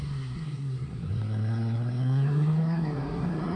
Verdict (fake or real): fake